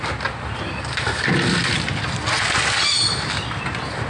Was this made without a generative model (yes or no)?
yes